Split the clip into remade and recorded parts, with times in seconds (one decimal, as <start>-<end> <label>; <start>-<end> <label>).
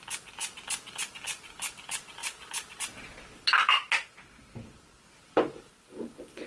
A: 0.0-2.2 recorded; 2.2-2.8 remade; 2.8-6.5 recorded